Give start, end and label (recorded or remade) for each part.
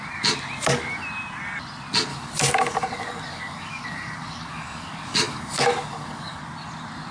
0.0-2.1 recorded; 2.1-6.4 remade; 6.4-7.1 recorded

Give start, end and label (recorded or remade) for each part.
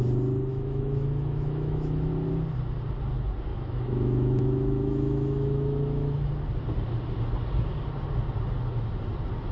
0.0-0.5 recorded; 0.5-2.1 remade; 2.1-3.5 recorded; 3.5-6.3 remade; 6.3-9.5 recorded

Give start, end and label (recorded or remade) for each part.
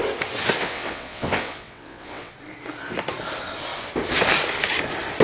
0.0-0.6 recorded; 0.6-2.3 remade; 2.3-5.2 recorded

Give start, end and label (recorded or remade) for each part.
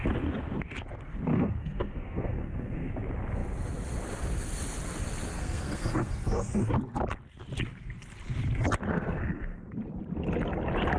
0.0-1.3 recorded; 1.3-2.9 remade; 2.9-5.3 recorded; 5.3-6.6 remade; 6.6-8.9 recorded; 8.9-9.7 remade; 9.7-11.0 recorded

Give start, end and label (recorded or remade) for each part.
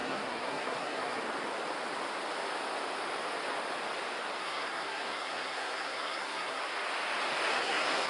0.0-1.2 remade; 1.2-4.4 recorded; 4.4-6.6 remade; 6.6-7.5 recorded; 7.5-8.1 remade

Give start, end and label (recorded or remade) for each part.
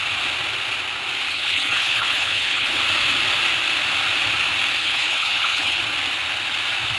0.0-1.3 recorded; 1.3-2.8 remade; 2.8-4.8 recorded; 4.8-5.8 remade; 5.8-7.0 recorded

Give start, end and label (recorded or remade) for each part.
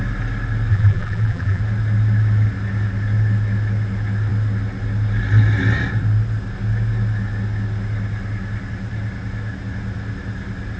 0.0-0.7 recorded; 0.7-1.6 remade; 1.6-10.8 recorded